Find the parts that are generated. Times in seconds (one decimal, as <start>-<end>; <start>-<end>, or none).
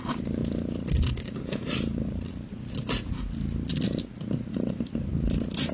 0.0-0.4; 1.1-2.3; 4.5-5.1